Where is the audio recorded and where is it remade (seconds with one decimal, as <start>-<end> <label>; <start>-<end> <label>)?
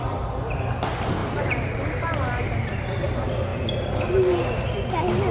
0.0-1.2 recorded; 1.2-3.1 remade; 3.1-5.3 recorded